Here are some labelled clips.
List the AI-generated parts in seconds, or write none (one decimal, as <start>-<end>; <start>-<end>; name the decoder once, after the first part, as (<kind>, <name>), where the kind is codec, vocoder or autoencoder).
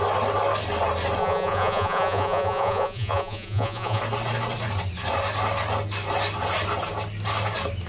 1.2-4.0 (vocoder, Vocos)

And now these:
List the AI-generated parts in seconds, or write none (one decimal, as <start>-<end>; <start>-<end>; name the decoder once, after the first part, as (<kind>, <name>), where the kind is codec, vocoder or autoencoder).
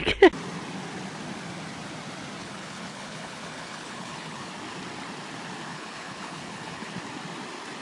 2.4-4.5 (codec, HILCodec); 5.7-6.9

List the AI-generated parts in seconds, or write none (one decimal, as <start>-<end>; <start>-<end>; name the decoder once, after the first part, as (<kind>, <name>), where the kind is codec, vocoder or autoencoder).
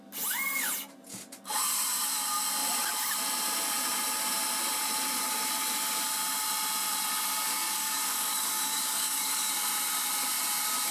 7.4-9.5 (codec, DAC)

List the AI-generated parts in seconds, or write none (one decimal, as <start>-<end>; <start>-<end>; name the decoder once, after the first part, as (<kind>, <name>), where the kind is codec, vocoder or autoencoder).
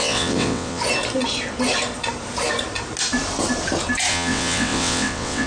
0.0-0.8 (vocoder, WaveNeXt); 4.1-5.5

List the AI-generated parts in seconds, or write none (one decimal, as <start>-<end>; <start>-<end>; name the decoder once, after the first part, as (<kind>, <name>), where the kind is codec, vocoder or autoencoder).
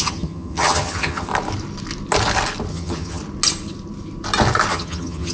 0.0-1.3 (vocoder, HiFi-GAN); 2.7-3.2; 4.7-5.3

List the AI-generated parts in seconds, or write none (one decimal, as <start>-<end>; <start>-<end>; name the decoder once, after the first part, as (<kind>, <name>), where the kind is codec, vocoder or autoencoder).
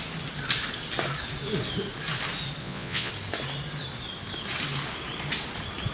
2.6-3.1 (vocoder, Vocos)